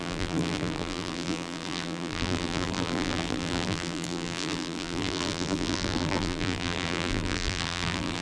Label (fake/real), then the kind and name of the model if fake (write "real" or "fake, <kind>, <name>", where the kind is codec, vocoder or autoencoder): fake, vocoder, BigVGAN v2